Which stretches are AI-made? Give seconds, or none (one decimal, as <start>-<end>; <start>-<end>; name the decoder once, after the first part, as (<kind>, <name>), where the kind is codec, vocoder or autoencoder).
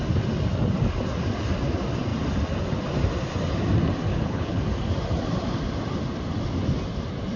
4.1-4.6 (codec, HILCodec)